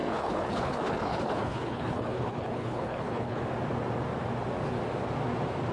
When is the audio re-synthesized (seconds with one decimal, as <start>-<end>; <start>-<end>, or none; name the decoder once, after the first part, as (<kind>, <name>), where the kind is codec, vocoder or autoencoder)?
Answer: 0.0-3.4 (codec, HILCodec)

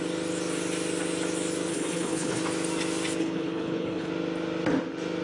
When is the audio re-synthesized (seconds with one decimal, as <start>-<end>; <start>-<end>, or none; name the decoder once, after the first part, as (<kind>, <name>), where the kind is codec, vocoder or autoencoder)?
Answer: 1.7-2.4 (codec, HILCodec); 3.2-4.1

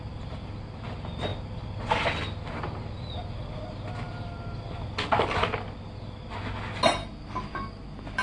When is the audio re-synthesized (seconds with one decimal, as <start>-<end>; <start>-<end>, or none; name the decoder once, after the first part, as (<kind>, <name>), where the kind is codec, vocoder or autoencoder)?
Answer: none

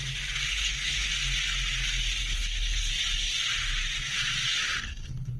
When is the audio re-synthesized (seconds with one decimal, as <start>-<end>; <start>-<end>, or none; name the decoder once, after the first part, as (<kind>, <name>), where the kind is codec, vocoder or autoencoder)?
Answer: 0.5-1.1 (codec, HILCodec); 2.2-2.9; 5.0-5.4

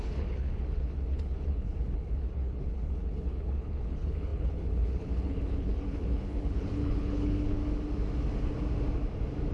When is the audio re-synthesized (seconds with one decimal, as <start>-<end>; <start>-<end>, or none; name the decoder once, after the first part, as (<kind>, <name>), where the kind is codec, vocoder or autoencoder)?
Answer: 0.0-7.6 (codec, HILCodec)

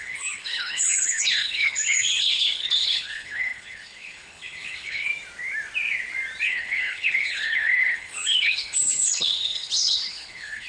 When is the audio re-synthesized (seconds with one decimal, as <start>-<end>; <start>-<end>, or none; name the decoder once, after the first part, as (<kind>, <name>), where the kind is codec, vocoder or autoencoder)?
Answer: 0.0-5.1 (codec, HILCodec); 6.4-10.7